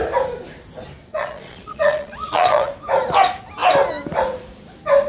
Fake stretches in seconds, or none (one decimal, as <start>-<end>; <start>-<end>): 1.1-2.7